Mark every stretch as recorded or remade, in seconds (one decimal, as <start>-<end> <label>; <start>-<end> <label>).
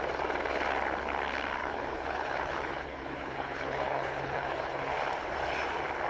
0.0-1.6 recorded; 1.6-4.8 remade; 4.8-6.1 recorded